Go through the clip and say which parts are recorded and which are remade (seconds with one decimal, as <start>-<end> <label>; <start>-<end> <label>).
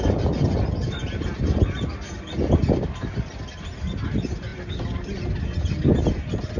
0.0-6.6 recorded